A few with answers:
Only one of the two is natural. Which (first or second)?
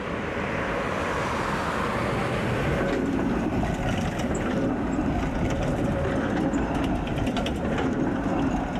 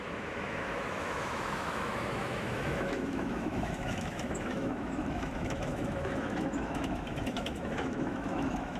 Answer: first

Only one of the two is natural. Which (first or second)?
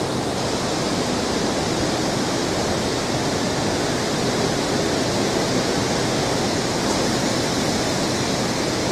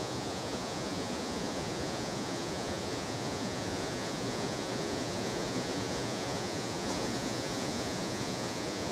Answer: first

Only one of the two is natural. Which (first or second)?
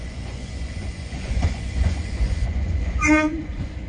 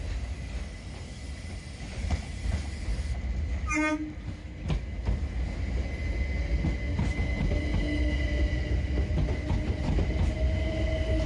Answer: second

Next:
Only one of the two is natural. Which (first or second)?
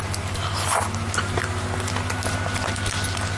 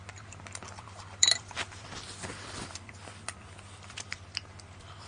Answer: first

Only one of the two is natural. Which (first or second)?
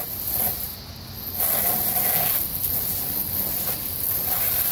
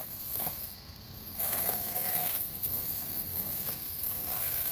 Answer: first